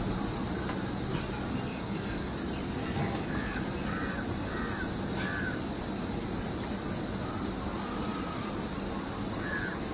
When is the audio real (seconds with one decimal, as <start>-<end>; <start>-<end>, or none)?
0.0-1.7; 2.3-3.0; 3.6-9.9